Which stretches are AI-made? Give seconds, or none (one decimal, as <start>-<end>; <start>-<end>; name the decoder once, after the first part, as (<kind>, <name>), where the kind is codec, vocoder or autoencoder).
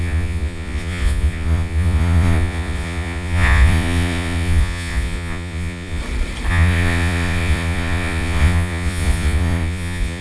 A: 0.0-6.0 (vocoder, Vocos); 6.5-10.2